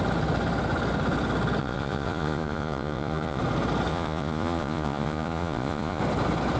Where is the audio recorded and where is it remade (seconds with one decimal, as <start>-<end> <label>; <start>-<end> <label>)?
0.0-1.6 recorded; 1.6-3.4 remade; 3.4-3.9 recorded; 3.9-6.0 remade; 6.0-6.6 recorded